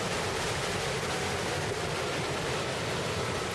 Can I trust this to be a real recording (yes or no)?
yes